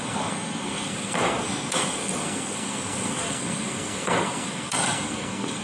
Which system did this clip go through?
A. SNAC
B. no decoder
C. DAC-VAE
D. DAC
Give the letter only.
A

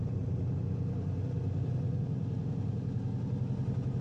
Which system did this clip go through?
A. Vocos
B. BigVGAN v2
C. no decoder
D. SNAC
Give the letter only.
C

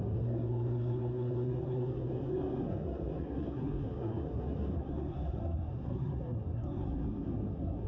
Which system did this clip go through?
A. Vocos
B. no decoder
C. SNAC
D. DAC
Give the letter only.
C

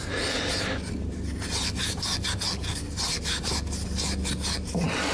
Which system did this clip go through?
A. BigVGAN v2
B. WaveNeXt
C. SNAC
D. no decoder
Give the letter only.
D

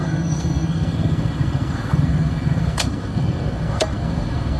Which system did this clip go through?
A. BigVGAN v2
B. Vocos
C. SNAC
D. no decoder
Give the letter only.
C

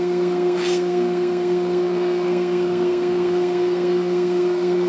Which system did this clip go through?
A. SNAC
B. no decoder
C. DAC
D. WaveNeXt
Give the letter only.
A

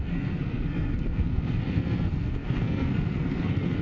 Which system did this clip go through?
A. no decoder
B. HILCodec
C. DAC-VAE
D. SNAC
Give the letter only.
D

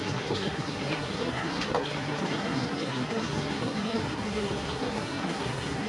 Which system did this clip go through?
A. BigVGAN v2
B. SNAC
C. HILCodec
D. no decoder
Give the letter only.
B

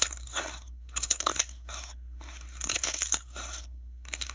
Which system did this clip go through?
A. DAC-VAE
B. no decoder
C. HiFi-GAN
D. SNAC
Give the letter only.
D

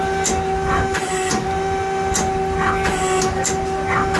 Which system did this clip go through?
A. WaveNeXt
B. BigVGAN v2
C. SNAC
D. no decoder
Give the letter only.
D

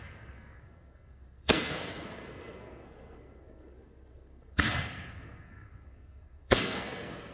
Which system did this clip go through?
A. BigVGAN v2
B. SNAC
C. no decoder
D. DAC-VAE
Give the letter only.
B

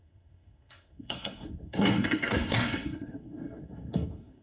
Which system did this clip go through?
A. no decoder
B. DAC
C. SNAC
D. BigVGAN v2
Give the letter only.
C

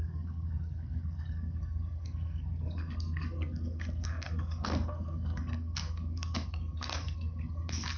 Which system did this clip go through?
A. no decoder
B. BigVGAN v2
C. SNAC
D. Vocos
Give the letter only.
C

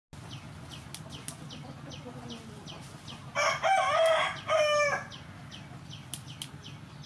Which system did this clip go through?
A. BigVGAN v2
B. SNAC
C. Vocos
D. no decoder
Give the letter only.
D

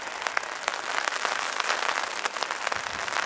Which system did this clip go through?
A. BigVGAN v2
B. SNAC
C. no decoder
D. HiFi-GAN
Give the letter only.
C